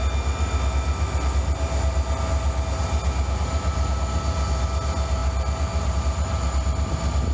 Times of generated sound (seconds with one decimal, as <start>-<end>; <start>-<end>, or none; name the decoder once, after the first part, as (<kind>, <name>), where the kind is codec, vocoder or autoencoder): 5.2-6.0 (vocoder, BigVGAN v2)